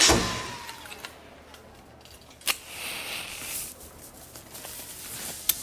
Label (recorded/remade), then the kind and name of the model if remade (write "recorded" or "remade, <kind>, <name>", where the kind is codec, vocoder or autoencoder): recorded